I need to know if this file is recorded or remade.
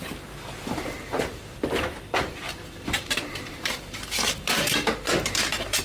remade